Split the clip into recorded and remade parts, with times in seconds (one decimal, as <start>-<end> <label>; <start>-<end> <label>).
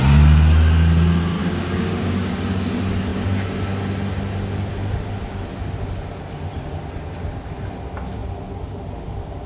0.0-1.4 recorded; 1.4-2.3 remade; 2.3-9.5 recorded